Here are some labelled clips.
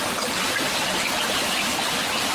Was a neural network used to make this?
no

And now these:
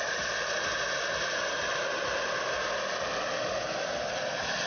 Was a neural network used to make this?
no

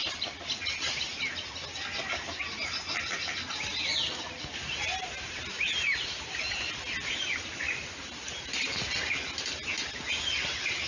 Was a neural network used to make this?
no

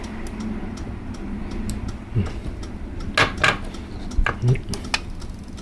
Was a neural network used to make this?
no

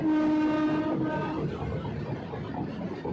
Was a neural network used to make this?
no